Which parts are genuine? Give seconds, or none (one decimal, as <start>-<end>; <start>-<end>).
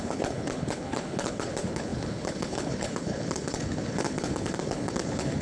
none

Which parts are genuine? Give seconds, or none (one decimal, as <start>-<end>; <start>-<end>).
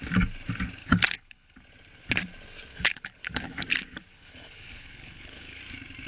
0.0-0.8; 1.6-2.7; 3.6-4.1; 5.6-6.1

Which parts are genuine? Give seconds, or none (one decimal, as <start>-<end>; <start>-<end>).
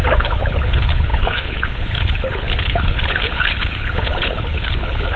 none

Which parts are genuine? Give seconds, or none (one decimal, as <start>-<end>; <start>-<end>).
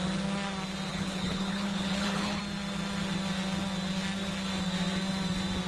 0.0-0.9; 2.4-5.7